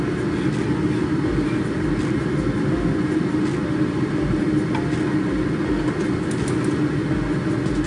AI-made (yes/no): no